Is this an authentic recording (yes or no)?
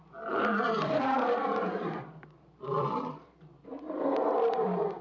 no